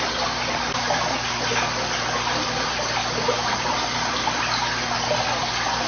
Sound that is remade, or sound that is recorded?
recorded